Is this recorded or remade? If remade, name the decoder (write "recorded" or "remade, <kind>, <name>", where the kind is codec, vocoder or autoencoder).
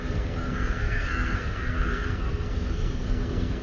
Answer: remade, codec, SNAC